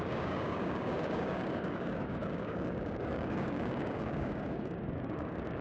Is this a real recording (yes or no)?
no